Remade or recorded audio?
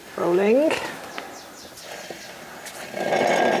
recorded